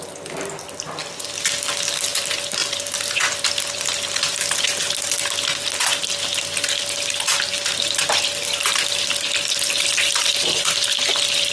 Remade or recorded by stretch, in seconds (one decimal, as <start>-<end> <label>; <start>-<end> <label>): 0.0-2.6 recorded; 2.6-3.5 remade; 3.5-11.5 recorded